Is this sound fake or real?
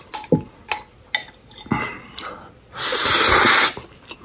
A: real